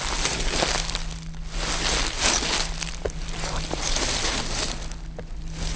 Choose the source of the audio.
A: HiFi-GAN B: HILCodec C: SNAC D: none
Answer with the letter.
D